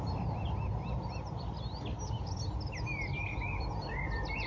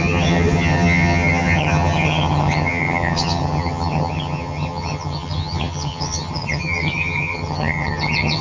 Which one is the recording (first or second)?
first